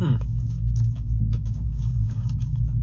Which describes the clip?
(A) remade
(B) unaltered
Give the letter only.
A